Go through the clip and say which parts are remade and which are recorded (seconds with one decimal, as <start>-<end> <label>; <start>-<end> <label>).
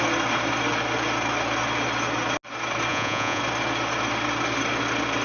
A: 0.0-2.9 recorded; 2.9-3.4 remade; 3.4-5.2 recorded